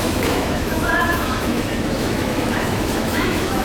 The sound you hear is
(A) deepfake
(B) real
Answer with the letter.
A